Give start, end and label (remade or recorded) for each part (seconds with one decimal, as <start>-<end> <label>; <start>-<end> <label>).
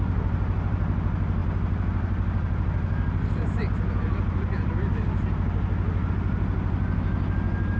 0.0-7.8 recorded